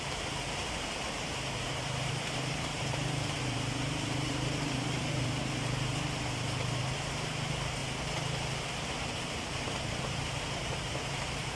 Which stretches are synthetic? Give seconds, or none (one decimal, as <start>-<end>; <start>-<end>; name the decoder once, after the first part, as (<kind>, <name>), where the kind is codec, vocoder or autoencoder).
0.0-7.8 (vocoder, BigVGAN v2); 8.9-11.5